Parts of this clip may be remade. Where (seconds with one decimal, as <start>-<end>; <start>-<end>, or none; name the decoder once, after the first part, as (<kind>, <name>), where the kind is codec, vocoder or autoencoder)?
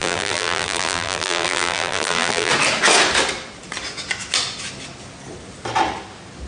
0.0-2.5 (vocoder, BigVGAN v2)